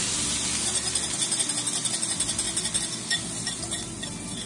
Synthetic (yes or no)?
no